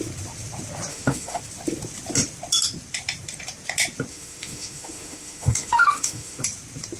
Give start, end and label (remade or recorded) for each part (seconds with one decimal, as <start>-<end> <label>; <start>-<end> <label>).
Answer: 0.0-0.9 recorded; 0.9-1.4 remade; 1.4-4.1 recorded; 4.1-6.4 remade; 6.4-7.0 recorded